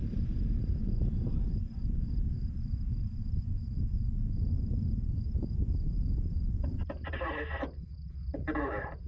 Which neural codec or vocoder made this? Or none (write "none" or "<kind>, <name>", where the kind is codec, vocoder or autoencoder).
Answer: vocoder, BigVGAN v2